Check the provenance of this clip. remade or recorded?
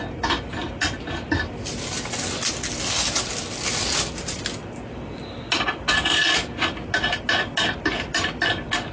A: recorded